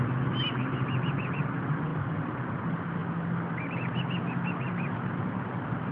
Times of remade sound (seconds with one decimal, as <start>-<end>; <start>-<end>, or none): none